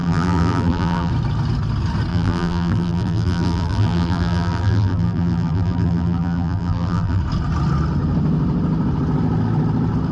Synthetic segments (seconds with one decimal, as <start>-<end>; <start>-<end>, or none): 0.0-1.1; 2.1-7.2